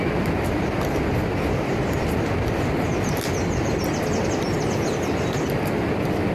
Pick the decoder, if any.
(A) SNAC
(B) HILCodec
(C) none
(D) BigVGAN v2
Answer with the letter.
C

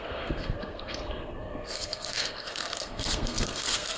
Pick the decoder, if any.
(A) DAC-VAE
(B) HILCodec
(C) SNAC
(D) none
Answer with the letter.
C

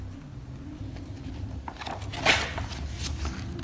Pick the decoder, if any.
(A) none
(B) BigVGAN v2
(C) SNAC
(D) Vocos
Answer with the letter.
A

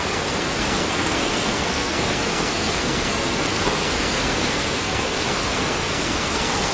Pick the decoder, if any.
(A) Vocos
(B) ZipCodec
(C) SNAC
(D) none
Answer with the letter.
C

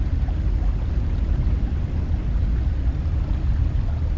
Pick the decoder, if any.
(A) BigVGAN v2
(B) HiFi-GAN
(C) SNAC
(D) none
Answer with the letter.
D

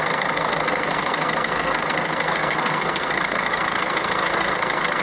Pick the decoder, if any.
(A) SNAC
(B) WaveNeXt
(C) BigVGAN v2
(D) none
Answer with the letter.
A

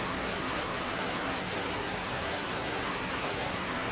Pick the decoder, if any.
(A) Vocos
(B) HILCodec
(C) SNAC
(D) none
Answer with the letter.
C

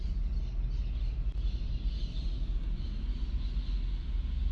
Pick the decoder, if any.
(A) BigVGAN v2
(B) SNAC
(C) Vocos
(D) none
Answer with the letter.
D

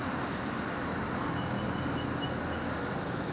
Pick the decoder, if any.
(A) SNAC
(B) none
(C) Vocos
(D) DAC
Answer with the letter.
B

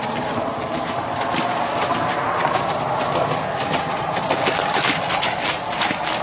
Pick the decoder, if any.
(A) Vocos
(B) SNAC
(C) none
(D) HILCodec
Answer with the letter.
C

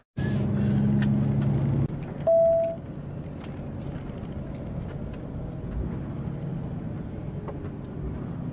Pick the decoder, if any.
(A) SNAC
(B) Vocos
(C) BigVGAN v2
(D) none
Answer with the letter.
D